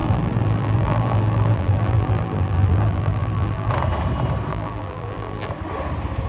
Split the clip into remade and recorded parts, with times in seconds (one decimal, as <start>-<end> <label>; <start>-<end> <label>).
0.0-3.7 remade; 3.7-4.5 recorded; 4.5-5.5 remade; 5.5-6.3 recorded